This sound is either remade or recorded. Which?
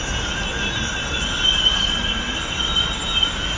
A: recorded